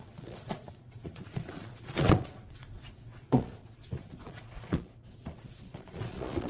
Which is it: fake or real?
fake